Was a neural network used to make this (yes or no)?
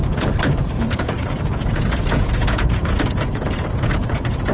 yes